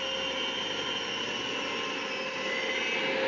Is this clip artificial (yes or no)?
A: no